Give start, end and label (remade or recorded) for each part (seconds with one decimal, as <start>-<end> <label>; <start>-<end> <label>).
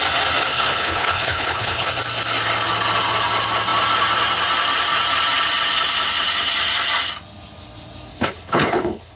0.0-0.5 recorded; 0.5-1.9 remade; 1.9-8.1 recorded; 8.1-9.2 remade